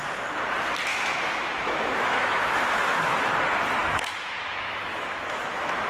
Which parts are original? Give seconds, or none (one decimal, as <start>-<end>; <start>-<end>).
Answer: 0.0-0.9; 3.4-3.8